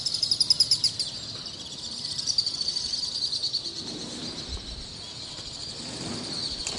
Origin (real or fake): real